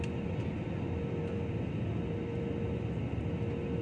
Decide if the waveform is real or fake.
real